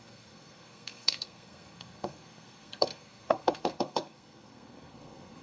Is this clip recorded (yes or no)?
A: no